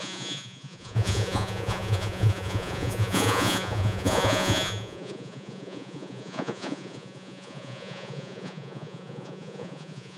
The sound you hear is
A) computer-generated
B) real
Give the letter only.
A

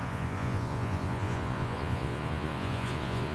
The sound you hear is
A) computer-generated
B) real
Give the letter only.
A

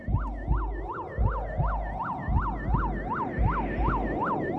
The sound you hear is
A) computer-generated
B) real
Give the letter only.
B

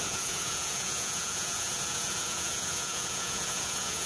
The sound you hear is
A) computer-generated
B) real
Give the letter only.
A